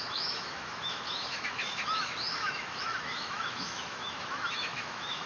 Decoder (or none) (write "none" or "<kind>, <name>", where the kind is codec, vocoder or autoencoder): autoencoder, DAC-VAE